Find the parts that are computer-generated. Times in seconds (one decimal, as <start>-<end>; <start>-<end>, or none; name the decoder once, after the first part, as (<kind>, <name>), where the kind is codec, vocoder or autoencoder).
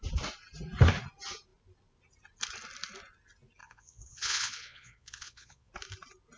3.6-5.7 (vocoder, Vocos)